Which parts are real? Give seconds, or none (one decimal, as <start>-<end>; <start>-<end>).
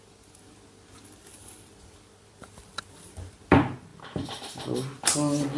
0.0-1.3; 3.4-5.6